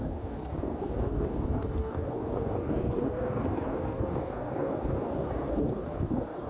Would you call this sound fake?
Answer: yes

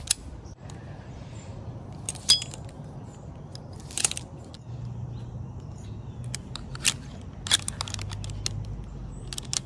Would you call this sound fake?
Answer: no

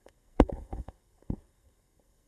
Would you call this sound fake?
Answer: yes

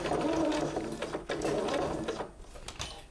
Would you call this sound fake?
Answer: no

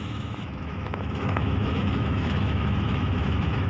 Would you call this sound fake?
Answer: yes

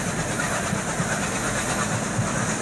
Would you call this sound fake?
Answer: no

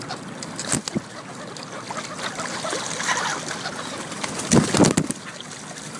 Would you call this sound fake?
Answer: no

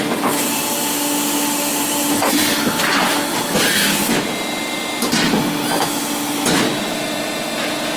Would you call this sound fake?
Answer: no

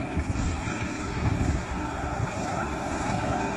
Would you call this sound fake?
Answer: yes